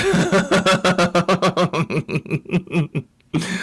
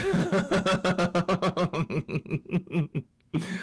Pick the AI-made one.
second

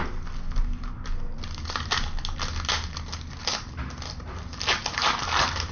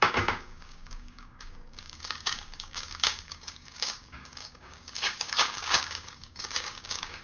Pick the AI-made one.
second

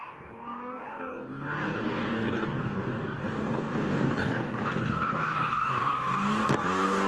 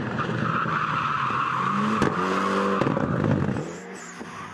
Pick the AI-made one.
first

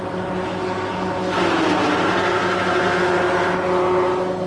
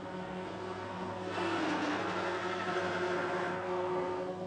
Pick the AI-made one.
second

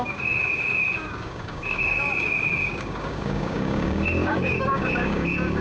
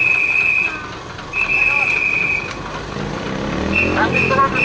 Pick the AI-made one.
first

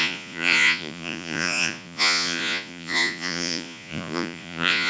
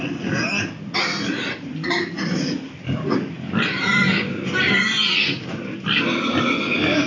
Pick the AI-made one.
first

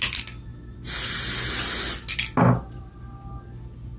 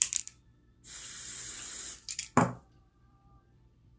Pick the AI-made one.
second